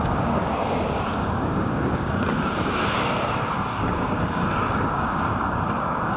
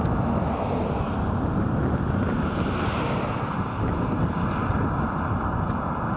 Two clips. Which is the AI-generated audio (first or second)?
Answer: first